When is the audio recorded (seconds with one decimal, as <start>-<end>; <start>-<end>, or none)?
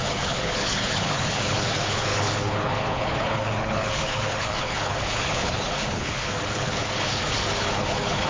none